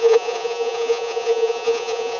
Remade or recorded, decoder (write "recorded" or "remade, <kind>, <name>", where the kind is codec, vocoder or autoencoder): remade, vocoder, Vocos